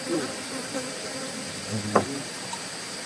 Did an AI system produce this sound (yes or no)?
yes